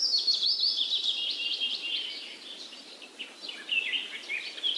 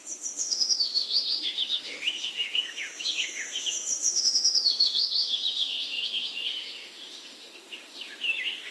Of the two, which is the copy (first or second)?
second